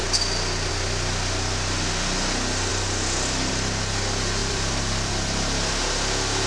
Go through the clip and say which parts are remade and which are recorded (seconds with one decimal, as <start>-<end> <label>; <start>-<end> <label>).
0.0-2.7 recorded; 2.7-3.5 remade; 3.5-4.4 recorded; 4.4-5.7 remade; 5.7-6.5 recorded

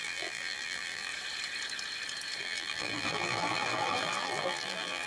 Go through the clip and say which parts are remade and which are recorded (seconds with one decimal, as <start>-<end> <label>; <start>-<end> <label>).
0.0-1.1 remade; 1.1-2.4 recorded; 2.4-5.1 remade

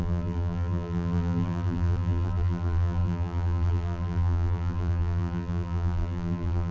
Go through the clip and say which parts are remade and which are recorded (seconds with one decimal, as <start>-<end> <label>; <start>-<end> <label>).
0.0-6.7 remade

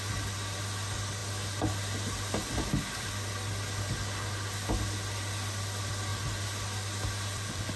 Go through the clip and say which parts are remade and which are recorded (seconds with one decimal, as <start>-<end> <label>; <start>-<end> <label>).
0.0-7.8 recorded

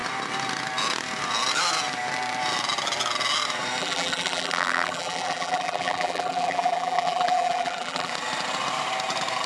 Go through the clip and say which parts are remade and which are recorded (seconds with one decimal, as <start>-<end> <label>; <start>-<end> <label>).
0.0-3.8 recorded; 3.8-8.1 remade; 8.1-9.5 recorded